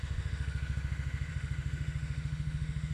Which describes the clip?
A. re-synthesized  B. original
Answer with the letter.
A